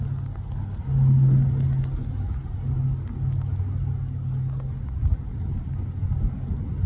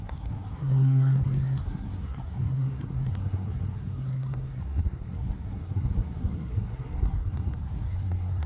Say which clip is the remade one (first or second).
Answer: second